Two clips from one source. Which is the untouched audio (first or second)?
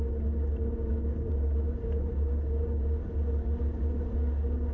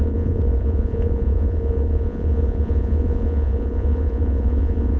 first